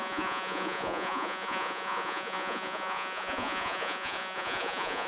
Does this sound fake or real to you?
fake